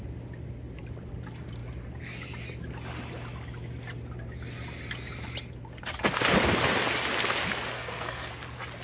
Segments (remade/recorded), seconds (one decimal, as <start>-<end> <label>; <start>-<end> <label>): 0.0-7.7 recorded; 7.7-8.3 remade; 8.3-8.8 recorded